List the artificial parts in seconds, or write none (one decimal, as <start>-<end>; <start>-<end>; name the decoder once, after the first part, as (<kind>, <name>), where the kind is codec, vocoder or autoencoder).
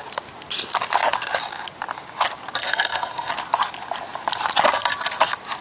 2.6-3.3 (codec, SNAC)